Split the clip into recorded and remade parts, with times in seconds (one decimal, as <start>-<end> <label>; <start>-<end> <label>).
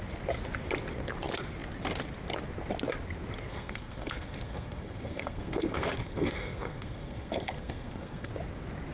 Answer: 0.0-3.5 recorded; 3.5-8.3 remade; 8.3-8.9 recorded